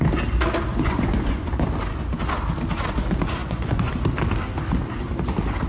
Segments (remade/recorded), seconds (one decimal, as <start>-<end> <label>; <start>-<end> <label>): 0.0-0.7 recorded; 0.7-1.5 remade; 1.5-3.4 recorded; 3.4-3.9 remade; 3.9-5.7 recorded